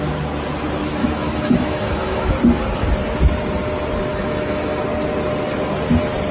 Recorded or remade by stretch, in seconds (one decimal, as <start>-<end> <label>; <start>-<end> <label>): 0.0-1.0 recorded; 1.0-2.3 remade; 2.3-4.1 recorded; 4.1-4.8 remade; 4.8-6.3 recorded